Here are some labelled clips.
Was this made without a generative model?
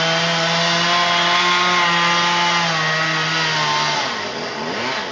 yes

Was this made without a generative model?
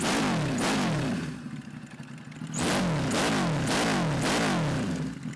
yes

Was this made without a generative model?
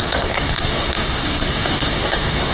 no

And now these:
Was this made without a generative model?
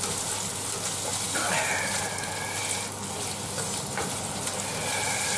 yes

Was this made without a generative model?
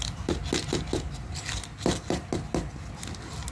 yes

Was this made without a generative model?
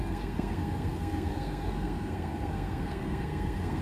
no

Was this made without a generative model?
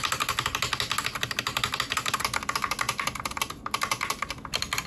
yes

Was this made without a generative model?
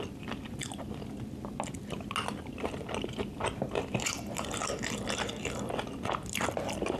yes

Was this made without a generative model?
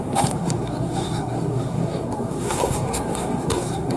no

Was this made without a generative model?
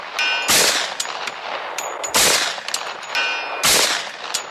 yes